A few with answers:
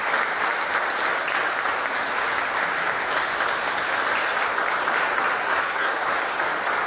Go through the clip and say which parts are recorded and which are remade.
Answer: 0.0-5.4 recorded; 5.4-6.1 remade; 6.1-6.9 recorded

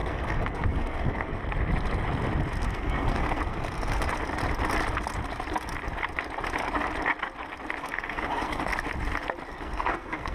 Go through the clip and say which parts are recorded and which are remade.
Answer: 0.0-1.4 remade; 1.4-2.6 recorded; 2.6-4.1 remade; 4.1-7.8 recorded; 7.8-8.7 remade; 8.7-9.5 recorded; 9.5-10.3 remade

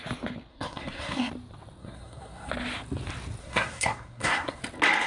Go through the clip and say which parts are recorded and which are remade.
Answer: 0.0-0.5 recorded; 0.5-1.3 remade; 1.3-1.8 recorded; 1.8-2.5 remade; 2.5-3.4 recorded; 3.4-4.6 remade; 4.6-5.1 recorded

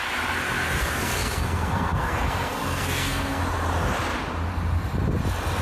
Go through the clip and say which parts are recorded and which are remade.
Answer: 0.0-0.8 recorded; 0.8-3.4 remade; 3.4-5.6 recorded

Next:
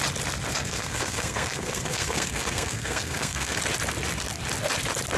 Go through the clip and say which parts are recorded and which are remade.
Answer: 0.0-0.5 recorded; 0.5-3.6 remade; 3.6-5.2 recorded